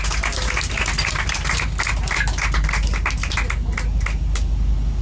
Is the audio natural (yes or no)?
yes